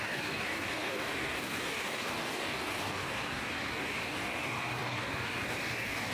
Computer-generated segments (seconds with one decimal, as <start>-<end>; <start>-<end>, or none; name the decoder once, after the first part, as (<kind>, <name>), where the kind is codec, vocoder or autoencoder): 0.0-6.1 (codec, DAC)